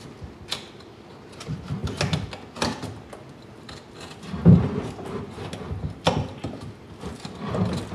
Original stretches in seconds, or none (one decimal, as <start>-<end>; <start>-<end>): 0.0-7.9